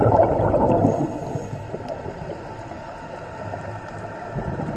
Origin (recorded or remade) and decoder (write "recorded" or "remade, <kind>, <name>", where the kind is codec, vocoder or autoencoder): remade, vocoder, BigVGAN v2